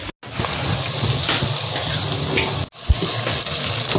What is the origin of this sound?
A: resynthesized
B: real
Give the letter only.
B